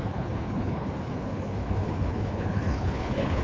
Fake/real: fake